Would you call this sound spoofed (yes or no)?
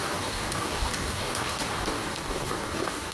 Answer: yes